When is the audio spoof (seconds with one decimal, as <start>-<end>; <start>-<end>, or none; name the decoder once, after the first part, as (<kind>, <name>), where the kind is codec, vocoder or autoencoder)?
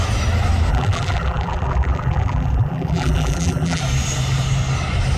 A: 0.7-3.8 (vocoder, BigVGAN v2)